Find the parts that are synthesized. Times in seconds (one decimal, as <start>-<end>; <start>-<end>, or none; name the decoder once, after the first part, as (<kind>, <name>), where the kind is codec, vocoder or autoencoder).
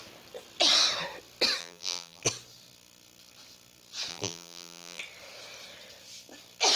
1.6-2.2 (vocoder, BigVGAN v2); 4.1-5.0